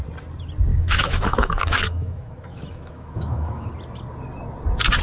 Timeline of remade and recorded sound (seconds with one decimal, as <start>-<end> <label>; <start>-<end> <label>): 0.0-0.7 recorded; 0.7-3.7 remade; 3.7-5.0 recorded